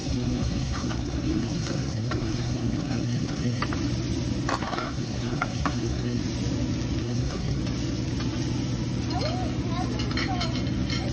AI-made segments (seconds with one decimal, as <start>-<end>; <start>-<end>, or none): 0.0-3.6; 4.6-6.2; 7.0-7.6